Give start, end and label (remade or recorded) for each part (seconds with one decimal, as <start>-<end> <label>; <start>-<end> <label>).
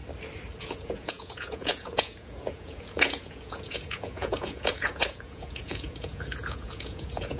0.0-0.6 recorded; 0.6-7.4 remade